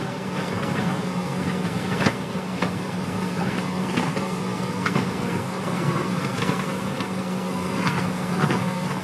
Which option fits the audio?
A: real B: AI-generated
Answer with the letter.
B